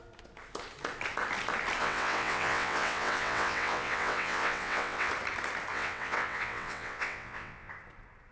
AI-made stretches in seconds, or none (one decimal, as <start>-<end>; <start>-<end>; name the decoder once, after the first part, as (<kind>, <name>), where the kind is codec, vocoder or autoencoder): 1.8-5.1 (vocoder, WaveNeXt); 5.7-7.7